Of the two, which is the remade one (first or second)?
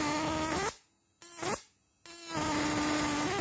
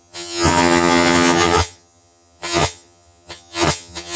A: second